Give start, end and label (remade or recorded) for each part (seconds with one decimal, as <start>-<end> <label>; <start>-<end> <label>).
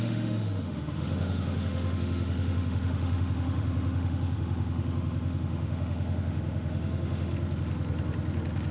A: 0.0-7.3 remade; 7.3-8.7 recorded